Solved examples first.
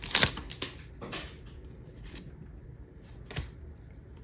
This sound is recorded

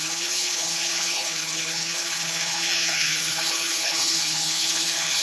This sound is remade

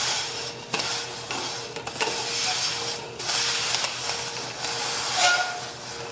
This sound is recorded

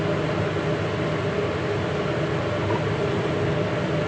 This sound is recorded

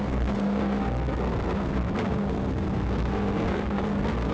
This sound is remade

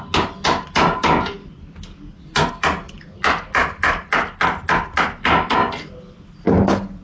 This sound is recorded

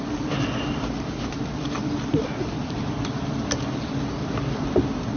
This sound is recorded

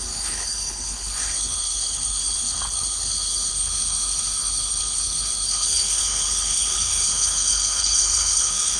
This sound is remade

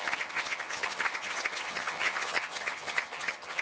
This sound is remade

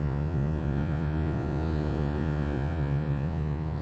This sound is remade